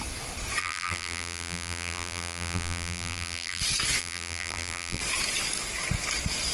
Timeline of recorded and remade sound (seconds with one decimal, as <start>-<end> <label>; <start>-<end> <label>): 0.0-0.6 recorded; 0.6-3.6 remade; 3.6-4.0 recorded; 4.0-5.0 remade; 5.0-6.5 recorded